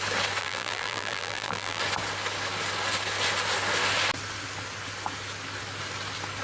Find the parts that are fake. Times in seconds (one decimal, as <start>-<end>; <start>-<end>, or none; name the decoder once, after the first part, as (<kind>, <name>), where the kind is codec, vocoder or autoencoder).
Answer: 0.4-1.8 (vocoder, BigVGAN v2)